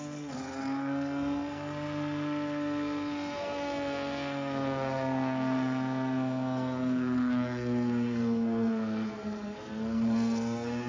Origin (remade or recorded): remade